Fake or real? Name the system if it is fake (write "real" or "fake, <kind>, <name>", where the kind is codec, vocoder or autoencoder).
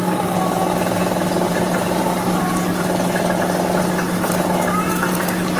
real